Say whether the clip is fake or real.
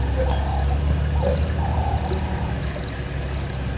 real